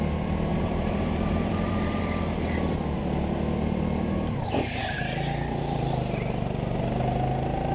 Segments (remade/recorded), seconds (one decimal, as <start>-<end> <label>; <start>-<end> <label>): 0.0-0.5 recorded; 0.5-2.0 remade; 2.0-7.7 recorded